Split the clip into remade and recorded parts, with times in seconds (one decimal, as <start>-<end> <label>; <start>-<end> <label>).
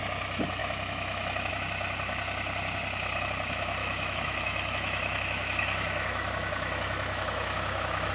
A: 0.0-0.6 recorded; 0.6-1.5 remade; 1.5-3.8 recorded; 3.8-8.1 remade